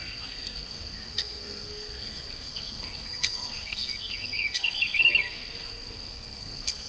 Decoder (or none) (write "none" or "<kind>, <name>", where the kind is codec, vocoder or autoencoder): codec, SNAC